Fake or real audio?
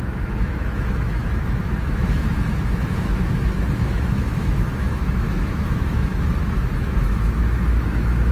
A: fake